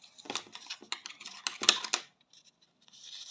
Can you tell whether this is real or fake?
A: real